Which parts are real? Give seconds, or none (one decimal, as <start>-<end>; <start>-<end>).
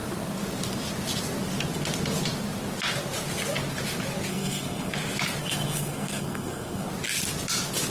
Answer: 0.0-4.3; 4.9-5.4; 6.9-7.9